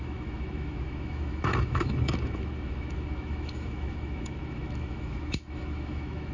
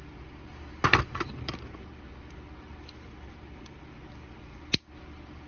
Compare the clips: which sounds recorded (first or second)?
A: second